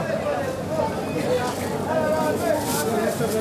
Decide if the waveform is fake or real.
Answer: real